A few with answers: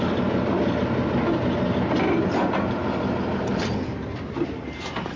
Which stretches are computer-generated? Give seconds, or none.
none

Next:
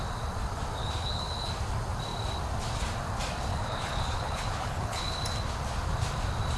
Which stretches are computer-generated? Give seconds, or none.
0.8-1.5 (codec, HILCodec); 3.5-5.2

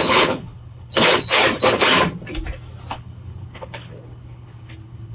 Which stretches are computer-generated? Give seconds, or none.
0.0-1.4 (codec, HILCodec); 2.9-5.1

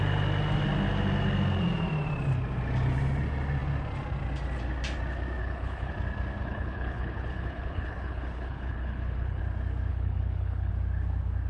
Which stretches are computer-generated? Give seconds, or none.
5.4-5.9 (codec, HILCodec); 6.4-9.4; 9.9-10.7

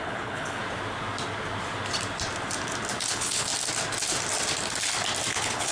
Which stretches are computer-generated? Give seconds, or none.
0.0-0.6 (codec, HILCodec); 3.1-3.5; 5.3-5.7

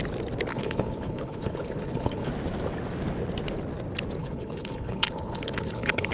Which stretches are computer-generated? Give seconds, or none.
0.5-2.3 (codec, HILCodec); 4.2-6.1

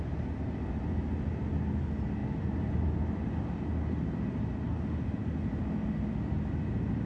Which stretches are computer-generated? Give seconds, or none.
none

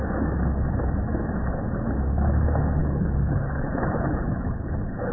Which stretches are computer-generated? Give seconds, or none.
2.8-5.1 (codec, HILCodec)